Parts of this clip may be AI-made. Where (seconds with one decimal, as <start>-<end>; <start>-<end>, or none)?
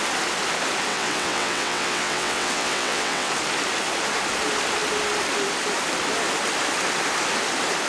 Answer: 0.9-3.3